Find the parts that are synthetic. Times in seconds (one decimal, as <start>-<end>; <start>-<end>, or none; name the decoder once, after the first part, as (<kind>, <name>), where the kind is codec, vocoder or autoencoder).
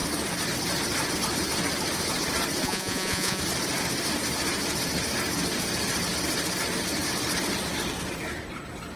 2.6-3.4 (vocoder, Vocos)